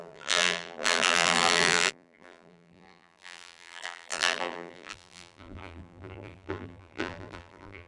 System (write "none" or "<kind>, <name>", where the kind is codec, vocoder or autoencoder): vocoder, BigVGAN v2